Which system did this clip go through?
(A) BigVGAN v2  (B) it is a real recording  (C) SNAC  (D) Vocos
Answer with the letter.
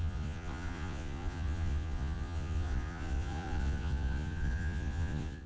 D